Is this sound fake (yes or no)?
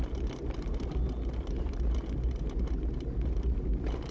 no